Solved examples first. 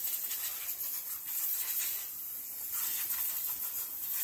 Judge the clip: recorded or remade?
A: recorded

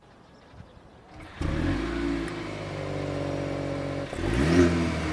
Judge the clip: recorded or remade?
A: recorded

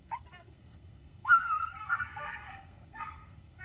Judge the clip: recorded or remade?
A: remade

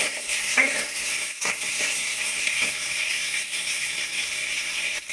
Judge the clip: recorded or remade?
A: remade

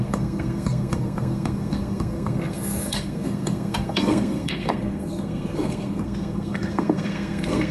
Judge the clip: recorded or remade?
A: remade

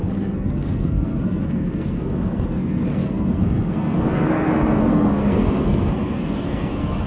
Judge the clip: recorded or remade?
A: remade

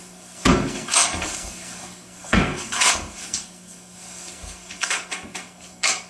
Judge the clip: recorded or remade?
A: remade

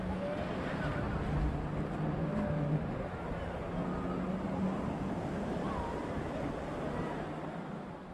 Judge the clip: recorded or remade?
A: recorded